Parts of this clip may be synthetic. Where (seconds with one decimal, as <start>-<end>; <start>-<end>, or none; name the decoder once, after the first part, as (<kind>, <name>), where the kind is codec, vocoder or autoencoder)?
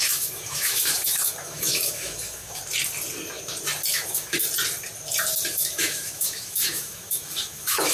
0.0-2.6 (autoencoder, DAC-VAE); 3.9-4.4; 5.5-7.9